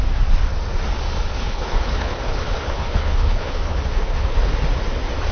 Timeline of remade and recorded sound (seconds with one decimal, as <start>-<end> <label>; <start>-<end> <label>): 0.0-1.3 recorded; 1.3-4.5 remade; 4.5-5.3 recorded